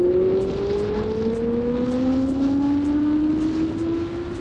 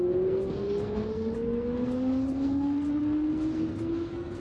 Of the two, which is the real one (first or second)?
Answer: first